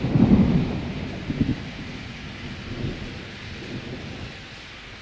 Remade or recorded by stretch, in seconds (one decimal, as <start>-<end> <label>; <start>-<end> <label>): 0.0-5.0 recorded